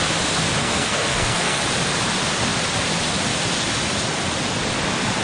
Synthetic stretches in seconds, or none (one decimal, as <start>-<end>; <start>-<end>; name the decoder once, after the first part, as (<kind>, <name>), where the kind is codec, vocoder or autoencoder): 0.6-1.6 (codec, SNAC)